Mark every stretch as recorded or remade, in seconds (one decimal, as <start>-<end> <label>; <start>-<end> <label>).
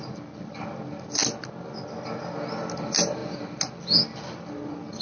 0.0-5.0 recorded